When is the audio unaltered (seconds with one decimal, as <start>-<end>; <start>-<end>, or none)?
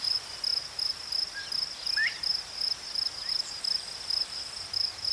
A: 0.0-5.1